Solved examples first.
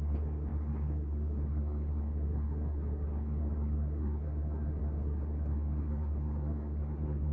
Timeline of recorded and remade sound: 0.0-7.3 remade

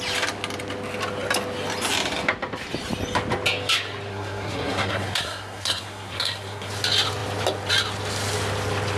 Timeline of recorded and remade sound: 0.0-4.1 recorded; 4.1-6.7 remade; 6.7-9.0 recorded

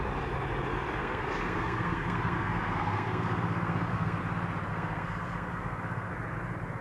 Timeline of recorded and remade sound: 0.0-1.0 recorded; 1.0-4.2 remade; 4.2-4.7 recorded; 4.7-6.1 remade; 6.1-6.8 recorded

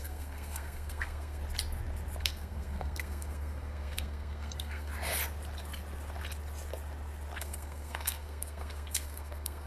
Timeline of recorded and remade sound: 0.0-1.4 remade; 1.4-2.2 recorded; 2.2-4.9 remade; 4.9-7.4 recorded; 7.4-9.7 remade